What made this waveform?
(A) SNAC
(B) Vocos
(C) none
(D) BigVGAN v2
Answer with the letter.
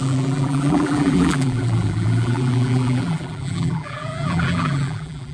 D